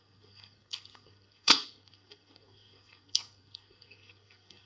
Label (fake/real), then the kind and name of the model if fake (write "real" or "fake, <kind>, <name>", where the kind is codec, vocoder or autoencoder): fake, codec, SNAC